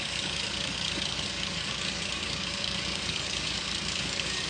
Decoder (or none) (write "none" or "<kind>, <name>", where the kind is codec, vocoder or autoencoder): codec, DAC